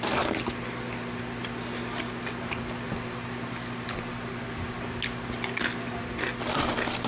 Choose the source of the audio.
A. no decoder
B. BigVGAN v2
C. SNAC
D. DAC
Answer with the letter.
A